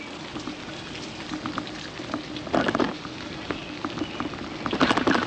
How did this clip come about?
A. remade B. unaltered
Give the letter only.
B